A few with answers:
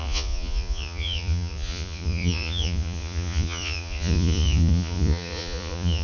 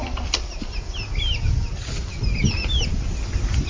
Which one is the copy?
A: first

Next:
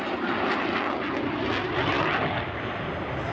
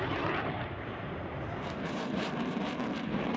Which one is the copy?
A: second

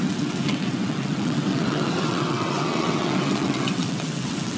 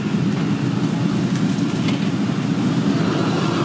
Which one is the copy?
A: first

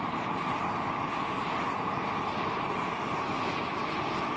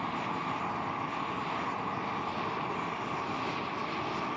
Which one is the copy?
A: first